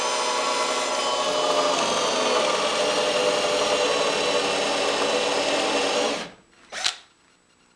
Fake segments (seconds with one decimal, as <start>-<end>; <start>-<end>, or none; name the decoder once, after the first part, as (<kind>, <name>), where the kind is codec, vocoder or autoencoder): none